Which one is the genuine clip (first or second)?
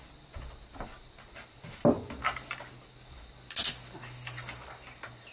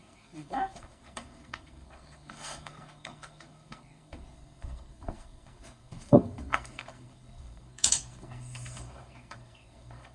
first